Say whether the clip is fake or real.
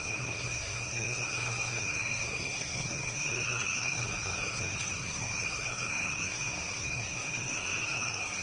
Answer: fake